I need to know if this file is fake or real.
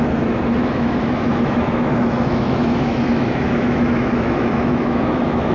fake